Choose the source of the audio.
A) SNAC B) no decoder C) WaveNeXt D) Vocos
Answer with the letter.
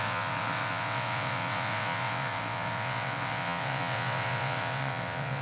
C